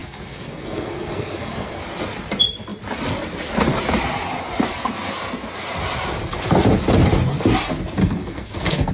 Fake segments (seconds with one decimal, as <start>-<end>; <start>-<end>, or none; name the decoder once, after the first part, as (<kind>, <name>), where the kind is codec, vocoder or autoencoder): 0.0-1.8 (codec, SNAC); 8.0-8.9